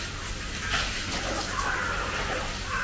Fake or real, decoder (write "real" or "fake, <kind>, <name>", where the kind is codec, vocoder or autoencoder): real